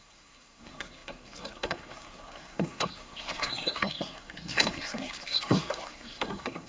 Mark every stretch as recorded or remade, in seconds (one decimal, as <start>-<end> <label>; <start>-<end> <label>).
0.0-6.7 remade